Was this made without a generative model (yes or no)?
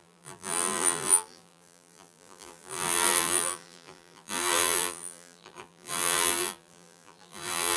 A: no